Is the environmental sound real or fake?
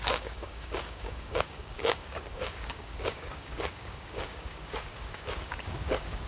fake